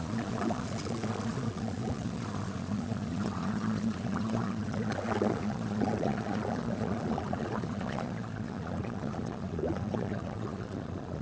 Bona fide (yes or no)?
no